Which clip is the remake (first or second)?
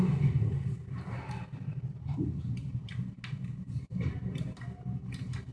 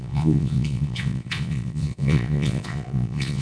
second